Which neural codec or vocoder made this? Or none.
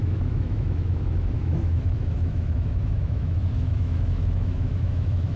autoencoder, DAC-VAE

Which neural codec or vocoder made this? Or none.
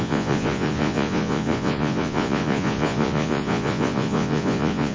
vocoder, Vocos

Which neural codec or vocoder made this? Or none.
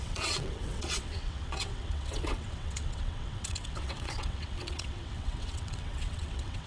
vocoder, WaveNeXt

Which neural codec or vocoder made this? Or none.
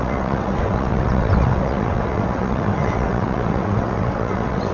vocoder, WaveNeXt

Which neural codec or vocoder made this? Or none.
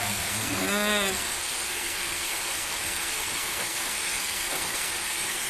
codec, SNAC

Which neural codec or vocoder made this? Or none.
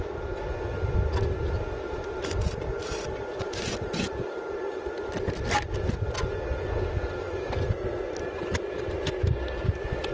none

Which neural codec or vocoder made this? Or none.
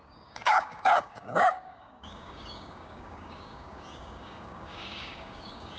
codec, DAC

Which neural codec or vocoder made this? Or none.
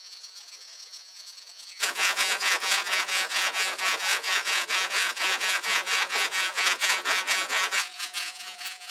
vocoder, Vocos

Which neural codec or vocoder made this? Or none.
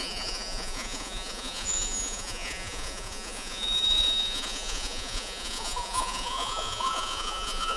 vocoder, Vocos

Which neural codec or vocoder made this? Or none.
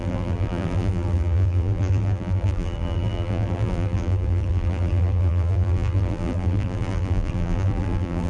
vocoder, BigVGAN v2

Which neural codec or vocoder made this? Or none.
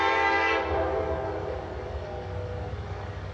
codec, DAC